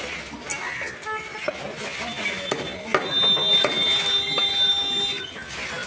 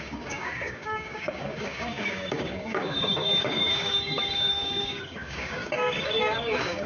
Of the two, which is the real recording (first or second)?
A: first